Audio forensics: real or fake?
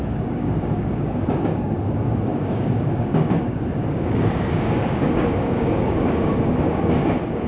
fake